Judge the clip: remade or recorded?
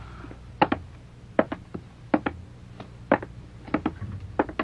recorded